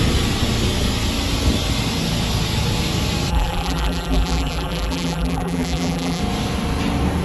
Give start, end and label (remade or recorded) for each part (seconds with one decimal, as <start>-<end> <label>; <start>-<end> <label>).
0.0-3.3 recorded; 3.3-6.2 remade; 6.2-7.2 recorded